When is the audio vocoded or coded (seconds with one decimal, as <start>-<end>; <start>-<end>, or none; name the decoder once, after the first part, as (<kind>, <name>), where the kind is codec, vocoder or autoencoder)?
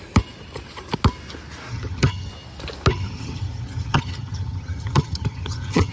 1.7-2.3 (vocoder, HiFi-GAN); 2.9-5.9